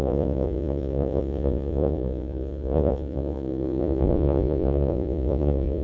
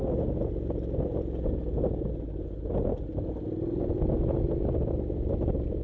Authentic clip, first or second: second